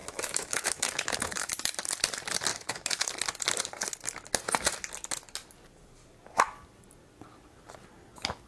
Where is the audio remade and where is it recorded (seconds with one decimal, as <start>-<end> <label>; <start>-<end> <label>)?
0.0-1.5 remade; 1.5-2.5 recorded; 2.5-3.1 remade; 3.1-8.5 recorded